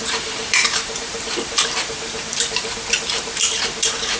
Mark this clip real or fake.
fake